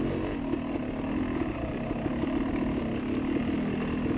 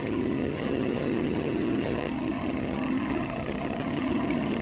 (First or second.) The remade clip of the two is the second